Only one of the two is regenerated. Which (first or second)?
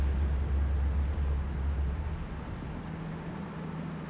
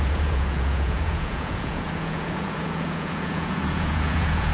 second